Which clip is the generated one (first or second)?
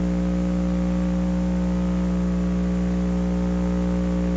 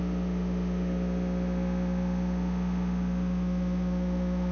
second